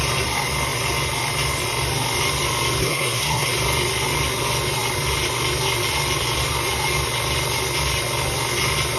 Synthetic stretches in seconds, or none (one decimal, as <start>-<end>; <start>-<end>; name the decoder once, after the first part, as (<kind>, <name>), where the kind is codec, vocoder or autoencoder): 2.8-3.5 (codec, SNAC)